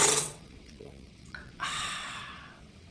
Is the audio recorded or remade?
remade